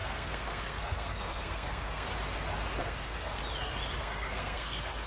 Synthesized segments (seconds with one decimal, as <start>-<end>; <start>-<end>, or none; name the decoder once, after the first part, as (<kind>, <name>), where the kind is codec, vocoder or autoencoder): 0.0-2.1 (codec, SNAC); 2.8-3.4; 4.0-5.1